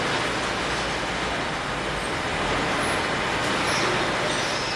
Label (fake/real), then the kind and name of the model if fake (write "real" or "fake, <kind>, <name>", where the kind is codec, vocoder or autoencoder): real